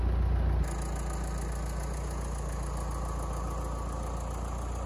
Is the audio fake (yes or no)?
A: no